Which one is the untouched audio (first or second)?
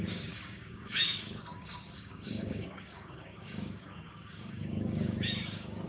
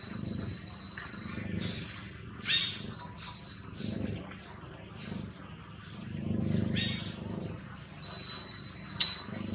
second